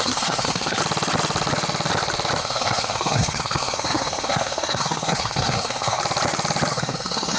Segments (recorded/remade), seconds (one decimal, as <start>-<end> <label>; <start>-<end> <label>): 0.0-0.8 remade; 0.8-2.4 recorded; 2.4-6.0 remade; 6.0-6.7 recorded; 6.7-7.4 remade